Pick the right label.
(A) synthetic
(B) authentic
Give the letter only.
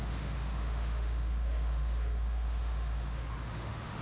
A